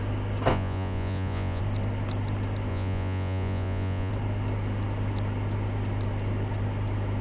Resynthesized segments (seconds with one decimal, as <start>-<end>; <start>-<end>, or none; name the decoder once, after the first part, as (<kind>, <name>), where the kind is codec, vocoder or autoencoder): 0.5-1.6 (vocoder, Vocos); 2.7-4.1